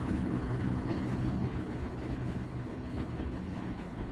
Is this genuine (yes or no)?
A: no